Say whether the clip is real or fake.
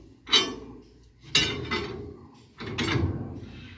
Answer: real